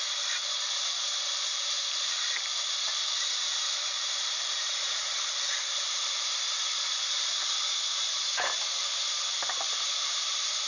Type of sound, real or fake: fake